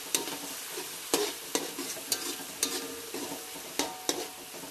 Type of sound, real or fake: real